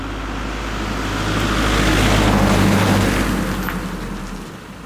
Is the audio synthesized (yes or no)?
no